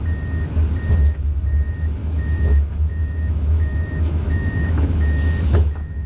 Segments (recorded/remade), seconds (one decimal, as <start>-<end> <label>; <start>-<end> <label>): 0.0-2.0 recorded; 2.0-6.1 remade